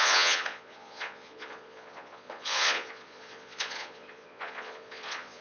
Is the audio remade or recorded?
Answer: remade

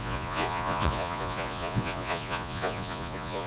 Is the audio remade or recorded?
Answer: remade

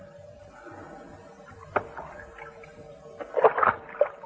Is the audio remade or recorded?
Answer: recorded